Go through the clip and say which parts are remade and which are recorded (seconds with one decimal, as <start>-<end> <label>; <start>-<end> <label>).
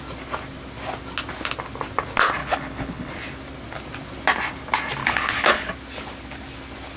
0.0-2.4 recorded; 2.4-3.1 remade; 3.1-5.0 recorded; 5.0-5.7 remade; 5.7-7.0 recorded